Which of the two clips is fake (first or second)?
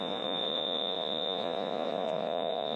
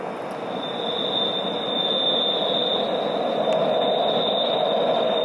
first